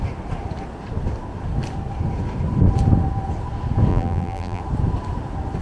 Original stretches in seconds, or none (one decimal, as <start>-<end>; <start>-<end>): 0.0-3.9; 4.6-5.6